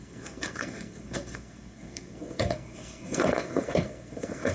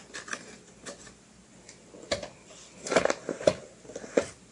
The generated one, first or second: first